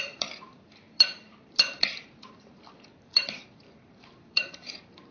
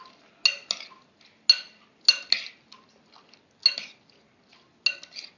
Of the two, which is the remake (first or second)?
first